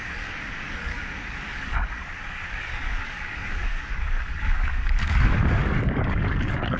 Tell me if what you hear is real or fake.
fake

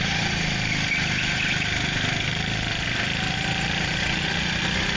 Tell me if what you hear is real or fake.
real